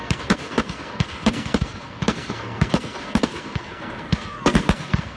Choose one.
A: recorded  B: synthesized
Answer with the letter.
B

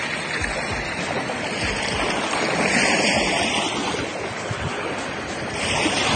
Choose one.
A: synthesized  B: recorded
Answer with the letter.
B